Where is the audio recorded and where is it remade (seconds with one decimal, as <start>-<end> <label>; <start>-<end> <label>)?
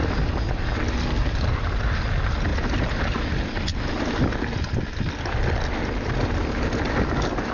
0.0-7.5 recorded